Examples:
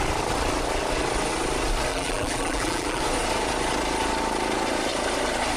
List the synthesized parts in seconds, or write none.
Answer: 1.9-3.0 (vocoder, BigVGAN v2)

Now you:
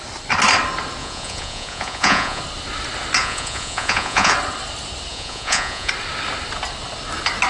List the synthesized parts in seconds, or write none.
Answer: 1.0-2.4 (vocoder, Vocos); 3.2-4.3; 5.1-5.9

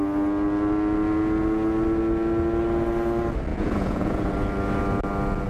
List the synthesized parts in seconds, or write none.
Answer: 3.5-4.3 (vocoder, Vocos)

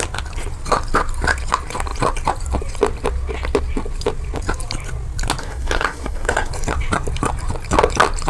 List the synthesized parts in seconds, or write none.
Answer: 5.4-6.5 (codec, SNAC)